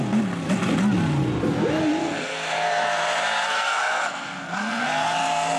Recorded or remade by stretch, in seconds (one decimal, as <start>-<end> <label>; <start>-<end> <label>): 0.0-2.0 recorded; 2.0-5.6 remade